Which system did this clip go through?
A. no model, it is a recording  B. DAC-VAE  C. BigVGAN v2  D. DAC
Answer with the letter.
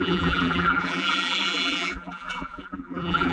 C